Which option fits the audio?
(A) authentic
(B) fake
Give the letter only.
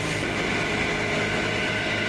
A